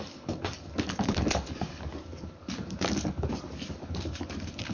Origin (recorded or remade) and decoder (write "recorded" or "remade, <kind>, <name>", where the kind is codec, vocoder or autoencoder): remade, codec, DAC